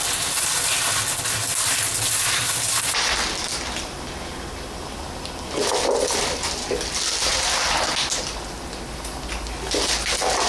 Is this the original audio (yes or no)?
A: yes